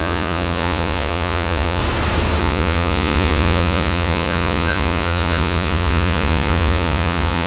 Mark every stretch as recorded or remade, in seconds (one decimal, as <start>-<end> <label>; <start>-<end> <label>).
0.0-1.8 remade; 1.8-2.4 recorded; 2.4-7.5 remade